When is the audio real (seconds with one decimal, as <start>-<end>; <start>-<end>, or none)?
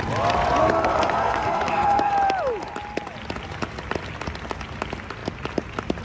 0.0-0.6; 2.1-6.0